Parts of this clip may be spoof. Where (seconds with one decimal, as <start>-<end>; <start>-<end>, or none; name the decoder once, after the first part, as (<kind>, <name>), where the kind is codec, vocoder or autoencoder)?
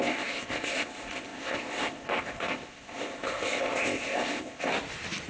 0.0-4.7 (codec, ZipCodec)